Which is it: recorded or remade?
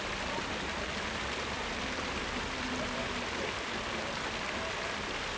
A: remade